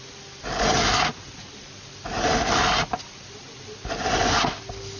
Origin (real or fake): real